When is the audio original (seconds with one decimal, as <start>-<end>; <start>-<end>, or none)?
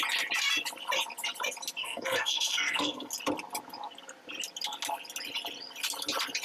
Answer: 0.0-1.8; 3.1-6.4